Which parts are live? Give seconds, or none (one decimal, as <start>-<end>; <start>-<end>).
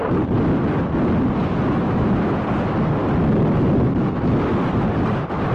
0.0-1.4; 2.4-5.5